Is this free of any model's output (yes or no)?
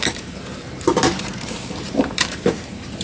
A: no